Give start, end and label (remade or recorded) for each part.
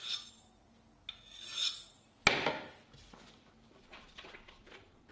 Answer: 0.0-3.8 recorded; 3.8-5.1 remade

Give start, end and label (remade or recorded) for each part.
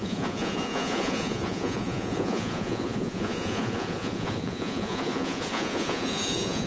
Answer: 0.0-6.7 remade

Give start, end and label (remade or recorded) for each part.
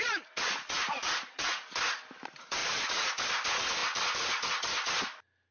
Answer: 0.0-1.6 remade; 1.6-2.6 recorded; 2.6-3.1 remade; 3.1-5.5 recorded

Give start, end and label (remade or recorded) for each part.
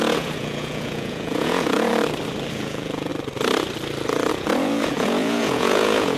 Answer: 0.0-1.9 remade; 1.9-2.5 recorded; 2.5-3.1 remade; 3.1-4.3 recorded; 4.3-6.2 remade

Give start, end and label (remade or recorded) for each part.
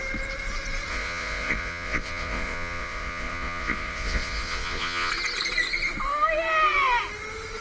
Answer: 0.0-0.9 recorded; 0.9-5.1 remade; 5.1-7.6 recorded